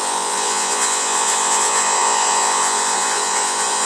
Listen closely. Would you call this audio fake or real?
fake